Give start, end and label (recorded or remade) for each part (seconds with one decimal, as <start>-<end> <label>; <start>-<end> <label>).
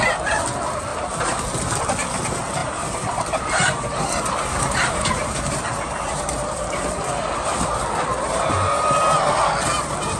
0.0-2.6 recorded; 2.6-6.6 remade; 6.6-10.2 recorded